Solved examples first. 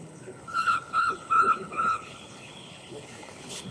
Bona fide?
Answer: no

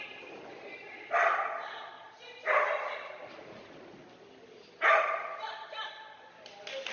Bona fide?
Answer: yes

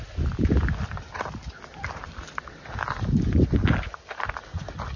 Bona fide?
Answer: yes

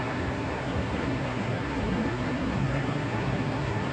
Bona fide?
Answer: no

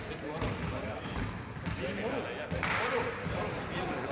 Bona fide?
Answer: yes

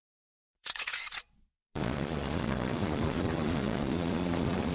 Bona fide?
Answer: no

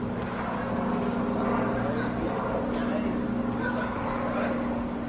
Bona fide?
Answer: yes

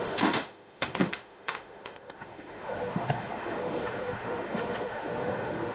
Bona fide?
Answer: no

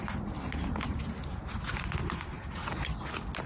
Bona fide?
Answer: yes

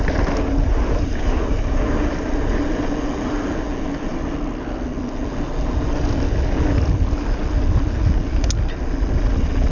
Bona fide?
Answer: yes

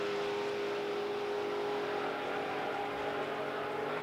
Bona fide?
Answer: yes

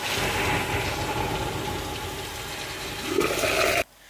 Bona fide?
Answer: yes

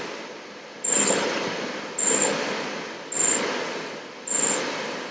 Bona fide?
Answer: yes